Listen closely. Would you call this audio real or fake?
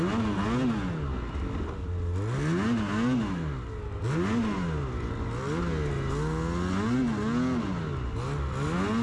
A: real